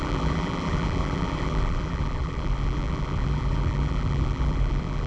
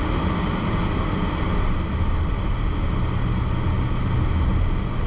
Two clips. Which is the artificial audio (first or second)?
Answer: first